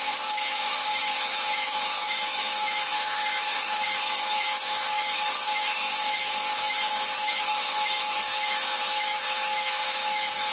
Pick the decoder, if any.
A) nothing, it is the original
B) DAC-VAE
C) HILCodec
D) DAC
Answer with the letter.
B